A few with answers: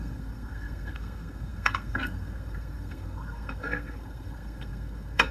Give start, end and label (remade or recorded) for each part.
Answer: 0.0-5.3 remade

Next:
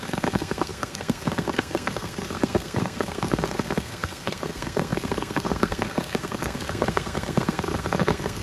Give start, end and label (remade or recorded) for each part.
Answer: 0.0-8.4 remade

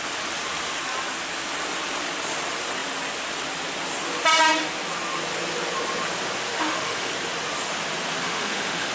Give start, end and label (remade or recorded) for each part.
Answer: 0.0-6.5 recorded; 6.5-7.1 remade; 7.1-8.2 recorded; 8.2-8.9 remade

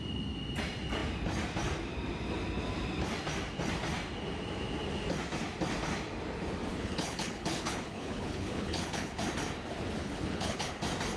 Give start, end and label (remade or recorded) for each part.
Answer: 0.0-6.7 recorded; 6.7-9.2 remade; 9.2-10.0 recorded; 10.0-10.7 remade; 10.7-11.2 recorded

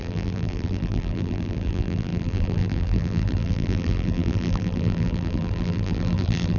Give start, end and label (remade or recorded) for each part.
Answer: 0.0-6.6 remade

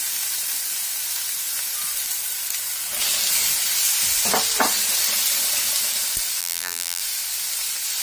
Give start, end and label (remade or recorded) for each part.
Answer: 0.0-6.4 recorded; 6.4-7.0 remade; 7.0-8.0 recorded